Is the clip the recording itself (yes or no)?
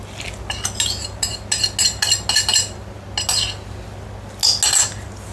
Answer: yes